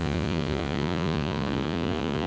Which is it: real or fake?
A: fake